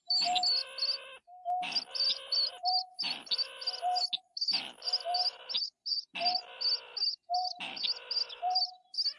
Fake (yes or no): no